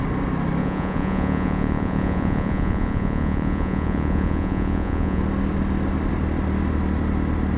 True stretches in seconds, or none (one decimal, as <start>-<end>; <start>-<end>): 0.0-0.6; 5.2-7.6